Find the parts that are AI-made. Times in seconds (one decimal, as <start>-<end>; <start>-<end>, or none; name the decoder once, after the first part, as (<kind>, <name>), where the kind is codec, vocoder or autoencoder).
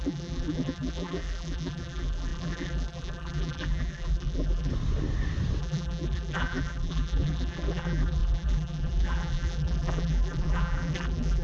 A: 0.0-4.7 (vocoder, BigVGAN v2); 5.6-11.4